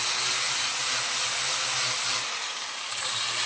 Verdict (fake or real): real